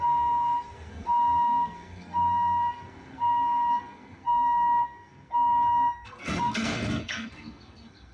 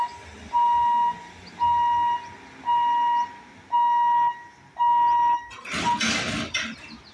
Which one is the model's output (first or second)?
first